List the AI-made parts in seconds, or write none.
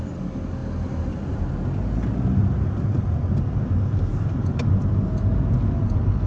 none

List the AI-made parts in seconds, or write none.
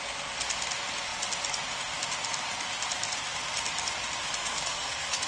4.4-5.3